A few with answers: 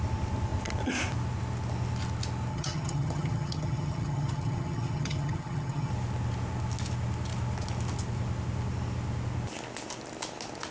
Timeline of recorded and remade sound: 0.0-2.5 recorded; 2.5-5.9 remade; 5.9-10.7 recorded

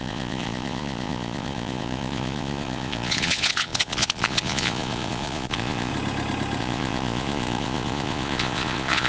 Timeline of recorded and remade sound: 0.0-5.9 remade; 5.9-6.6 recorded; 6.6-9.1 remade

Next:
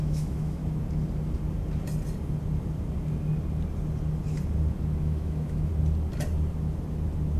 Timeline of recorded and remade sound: 0.0-0.6 remade; 0.6-5.0 recorded; 5.0-5.7 remade; 5.7-7.4 recorded

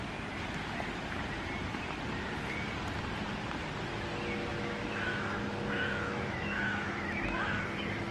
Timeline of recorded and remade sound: 0.0-4.5 recorded; 4.5-7.6 remade; 7.6-8.1 recorded

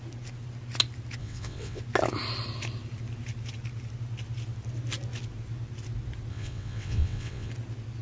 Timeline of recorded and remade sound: 0.0-1.2 recorded; 1.2-1.8 remade; 1.8-6.3 recorded; 6.3-7.5 remade; 7.5-8.0 recorded